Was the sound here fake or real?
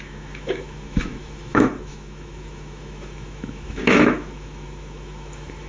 fake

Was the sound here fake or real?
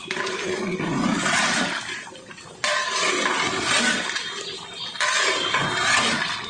real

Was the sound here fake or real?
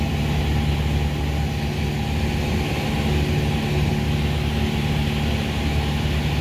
real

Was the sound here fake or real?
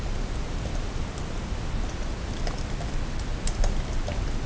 real